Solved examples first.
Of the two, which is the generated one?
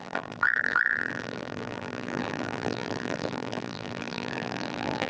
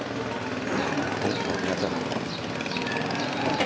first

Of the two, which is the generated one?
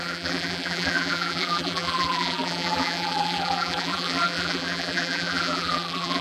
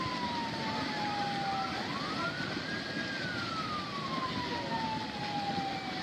first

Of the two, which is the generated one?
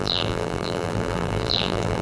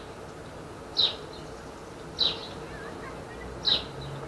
first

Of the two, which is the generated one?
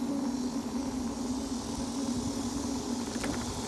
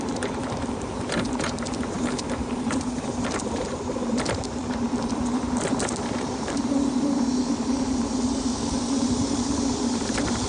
second